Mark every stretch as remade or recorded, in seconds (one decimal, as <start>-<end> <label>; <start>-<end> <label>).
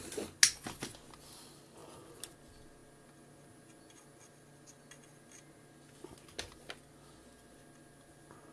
0.0-8.5 recorded